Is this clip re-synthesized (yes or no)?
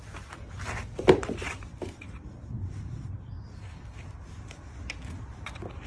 no